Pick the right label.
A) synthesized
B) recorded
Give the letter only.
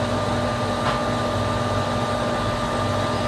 B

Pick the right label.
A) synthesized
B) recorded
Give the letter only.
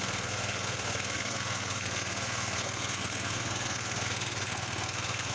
A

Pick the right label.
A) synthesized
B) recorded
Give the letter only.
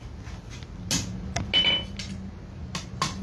B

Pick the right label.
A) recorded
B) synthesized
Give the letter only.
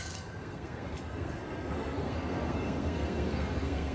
B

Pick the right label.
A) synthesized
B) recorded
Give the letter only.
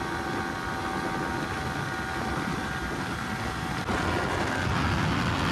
B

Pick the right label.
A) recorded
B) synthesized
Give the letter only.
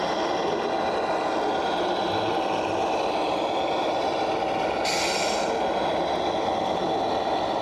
A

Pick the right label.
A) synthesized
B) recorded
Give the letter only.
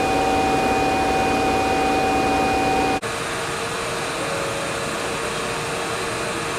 B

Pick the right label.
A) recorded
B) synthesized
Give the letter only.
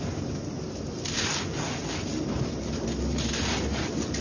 A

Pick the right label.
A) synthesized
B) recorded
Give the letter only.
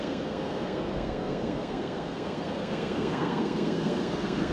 A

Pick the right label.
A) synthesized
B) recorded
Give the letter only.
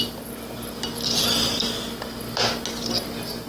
B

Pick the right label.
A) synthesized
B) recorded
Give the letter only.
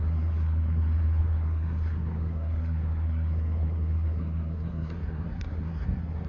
A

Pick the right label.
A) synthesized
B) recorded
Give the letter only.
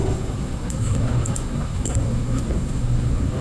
A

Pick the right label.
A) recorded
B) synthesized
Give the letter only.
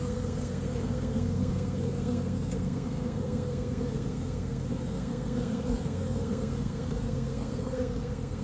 B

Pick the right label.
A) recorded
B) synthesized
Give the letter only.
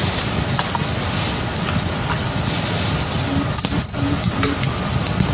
A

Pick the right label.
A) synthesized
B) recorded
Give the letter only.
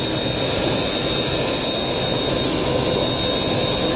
B